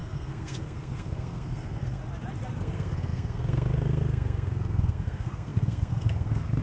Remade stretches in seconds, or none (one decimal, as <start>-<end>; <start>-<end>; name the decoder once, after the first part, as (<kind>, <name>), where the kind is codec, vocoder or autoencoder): 0.0-2.0 (codec, SNAC); 2.6-6.6